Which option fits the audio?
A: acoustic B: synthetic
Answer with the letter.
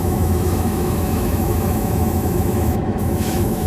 B